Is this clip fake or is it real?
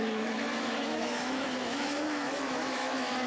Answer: fake